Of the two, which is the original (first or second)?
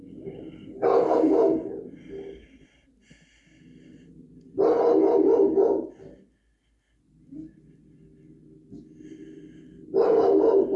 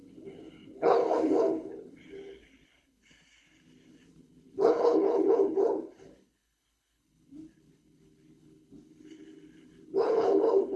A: first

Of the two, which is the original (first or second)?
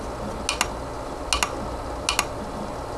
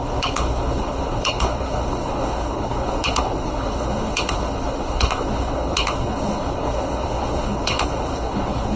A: first